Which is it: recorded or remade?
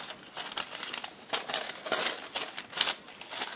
recorded